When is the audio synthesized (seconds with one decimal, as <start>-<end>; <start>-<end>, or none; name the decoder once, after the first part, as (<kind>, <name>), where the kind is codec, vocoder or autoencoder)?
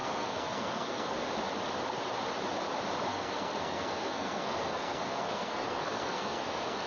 0.0-1.3 (codec, SNAC); 3.1-6.9